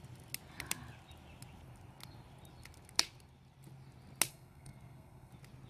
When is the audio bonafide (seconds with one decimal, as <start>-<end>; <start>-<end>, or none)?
0.0-4.3; 5.3-5.7